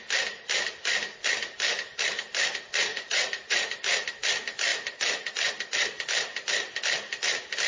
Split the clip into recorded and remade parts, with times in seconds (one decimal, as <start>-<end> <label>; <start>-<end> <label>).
0.0-2.9 recorded; 2.9-3.7 remade; 3.7-7.7 recorded